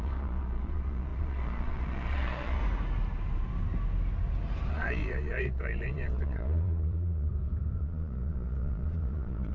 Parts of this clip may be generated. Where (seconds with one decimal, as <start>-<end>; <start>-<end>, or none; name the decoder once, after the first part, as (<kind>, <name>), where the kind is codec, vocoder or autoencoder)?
0.0-2.6 (vocoder, Vocos); 4.7-7.3; 7.8-9.5